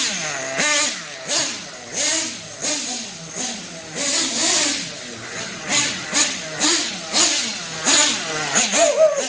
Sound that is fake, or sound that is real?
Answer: real